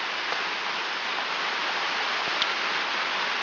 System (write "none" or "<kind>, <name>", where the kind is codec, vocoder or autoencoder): none